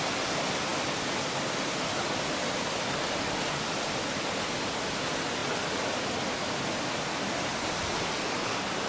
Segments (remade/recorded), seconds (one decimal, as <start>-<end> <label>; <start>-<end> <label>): 0.0-8.9 recorded